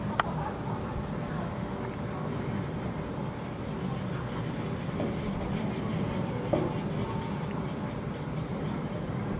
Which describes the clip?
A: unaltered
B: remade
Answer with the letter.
A